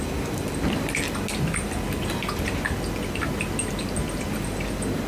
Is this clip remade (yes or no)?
no